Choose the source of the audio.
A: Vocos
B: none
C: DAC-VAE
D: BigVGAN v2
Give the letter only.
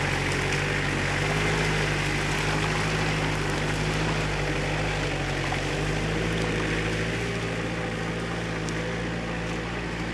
B